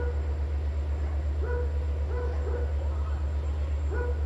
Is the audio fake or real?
real